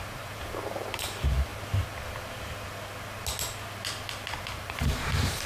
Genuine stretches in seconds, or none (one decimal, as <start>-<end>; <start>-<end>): 1.5-4.4